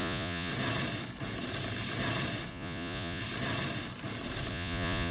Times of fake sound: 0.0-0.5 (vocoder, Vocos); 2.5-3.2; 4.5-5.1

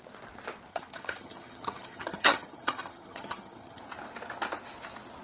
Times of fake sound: 0.7-3.8 (vocoder, HiFi-GAN)

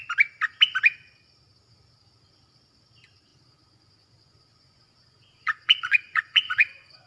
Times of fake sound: 3.3-7.1 (vocoder, Vocos)